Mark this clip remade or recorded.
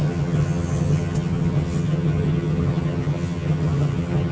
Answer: remade